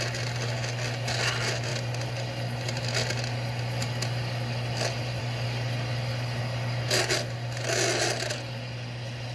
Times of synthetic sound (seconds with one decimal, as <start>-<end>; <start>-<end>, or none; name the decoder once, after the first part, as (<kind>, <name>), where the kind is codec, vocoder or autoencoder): none